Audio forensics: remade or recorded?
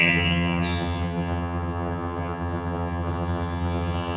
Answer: remade